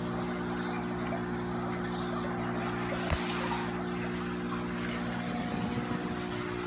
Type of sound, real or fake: real